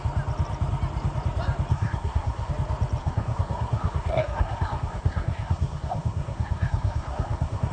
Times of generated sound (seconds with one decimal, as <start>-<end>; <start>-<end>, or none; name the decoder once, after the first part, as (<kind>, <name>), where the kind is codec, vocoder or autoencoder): 1.7-2.5 (codec, SNAC); 3.0-7.7